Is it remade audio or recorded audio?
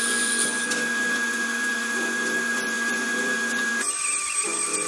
remade